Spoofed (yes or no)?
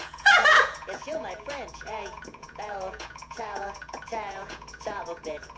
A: yes